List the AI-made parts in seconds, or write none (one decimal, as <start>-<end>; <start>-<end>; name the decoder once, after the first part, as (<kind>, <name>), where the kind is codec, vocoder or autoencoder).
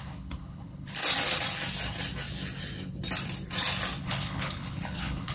0.0-1.0 (codec, HILCodec); 4.0-5.3